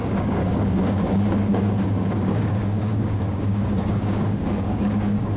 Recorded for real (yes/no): no